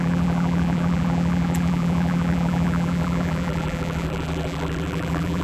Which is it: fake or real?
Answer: fake